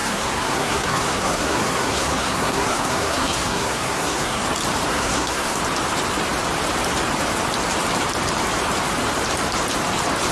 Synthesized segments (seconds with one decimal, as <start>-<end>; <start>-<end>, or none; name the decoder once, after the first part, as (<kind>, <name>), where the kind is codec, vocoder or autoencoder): 0.0-4.4 (codec, SNAC); 4.9-5.6